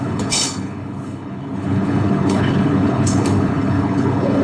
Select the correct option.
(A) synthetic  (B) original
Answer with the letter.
A